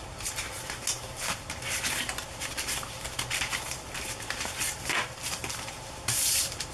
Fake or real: fake